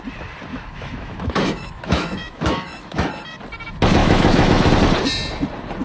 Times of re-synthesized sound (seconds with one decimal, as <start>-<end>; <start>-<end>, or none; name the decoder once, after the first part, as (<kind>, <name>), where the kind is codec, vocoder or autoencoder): 0.5-3.1 (autoencoder, DAC-VAE); 4.0-4.7